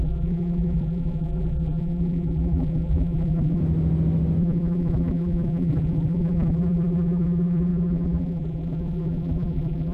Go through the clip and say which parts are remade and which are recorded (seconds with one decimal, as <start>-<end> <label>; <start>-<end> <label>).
0.0-3.6 remade; 3.6-4.4 recorded; 4.4-9.9 remade